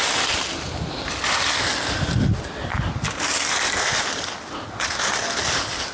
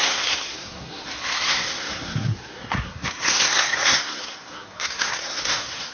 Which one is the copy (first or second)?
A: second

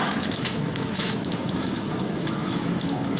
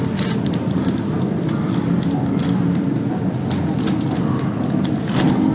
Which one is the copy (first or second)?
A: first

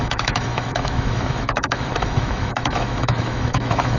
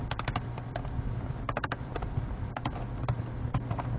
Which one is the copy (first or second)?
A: first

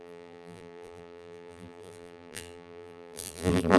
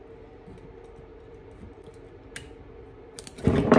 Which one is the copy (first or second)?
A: first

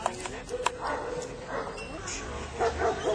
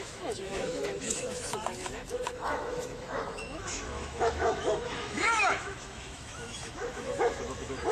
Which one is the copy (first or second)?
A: second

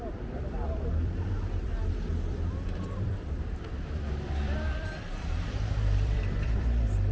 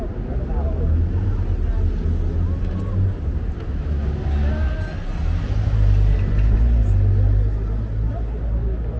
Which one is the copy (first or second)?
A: first